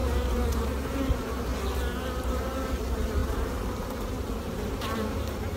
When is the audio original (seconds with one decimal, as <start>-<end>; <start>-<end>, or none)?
1.5-2.3